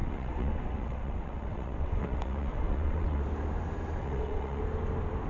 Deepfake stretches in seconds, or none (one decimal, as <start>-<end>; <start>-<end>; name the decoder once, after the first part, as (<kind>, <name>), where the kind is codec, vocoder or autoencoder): 0.0-3.2 (vocoder, WaveNeXt); 4.0-4.6